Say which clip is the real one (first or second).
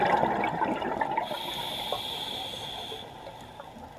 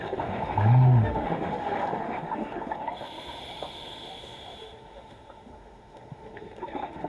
first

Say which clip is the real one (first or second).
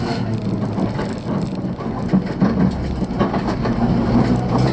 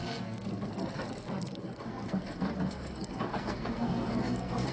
first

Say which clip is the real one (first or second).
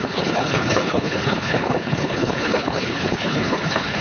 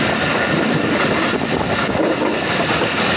second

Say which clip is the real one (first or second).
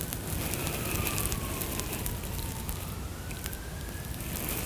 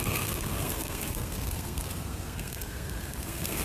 first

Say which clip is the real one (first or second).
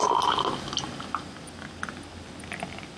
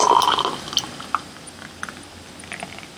first